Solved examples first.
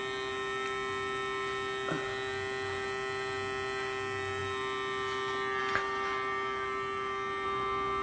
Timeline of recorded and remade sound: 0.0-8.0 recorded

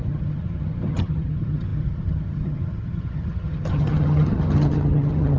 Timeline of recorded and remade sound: 0.0-5.4 remade

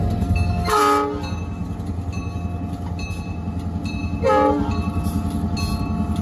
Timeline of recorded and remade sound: 0.0-0.8 remade; 0.8-6.2 recorded

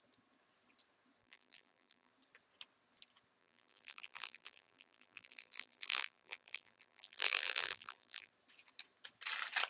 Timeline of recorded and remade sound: 0.0-1.2 recorded; 1.2-2.1 remade; 2.1-3.4 recorded; 3.4-8.3 remade; 8.3-9.7 recorded